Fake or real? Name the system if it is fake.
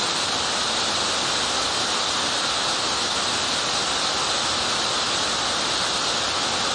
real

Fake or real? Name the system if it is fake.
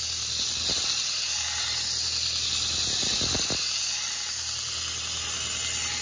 real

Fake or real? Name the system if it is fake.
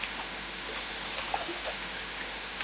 fake, autoencoder, DAC-VAE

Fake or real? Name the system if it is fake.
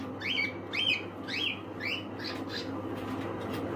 real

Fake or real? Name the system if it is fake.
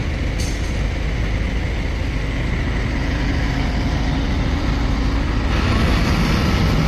real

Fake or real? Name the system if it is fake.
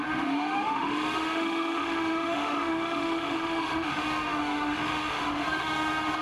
fake, autoencoder, DAC-VAE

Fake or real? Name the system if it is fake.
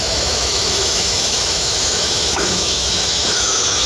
fake, autoencoder, DAC-VAE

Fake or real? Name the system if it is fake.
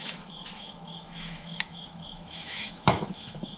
fake, autoencoder, DAC-VAE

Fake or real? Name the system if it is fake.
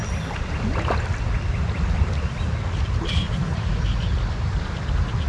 real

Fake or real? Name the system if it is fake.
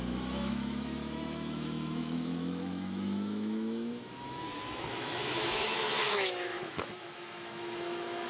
fake, autoencoder, DAC-VAE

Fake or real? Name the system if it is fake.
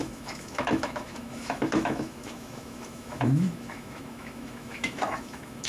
fake, autoencoder, DAC-VAE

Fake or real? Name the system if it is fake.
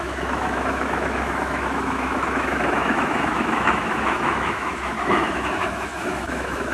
fake, autoencoder, DAC-VAE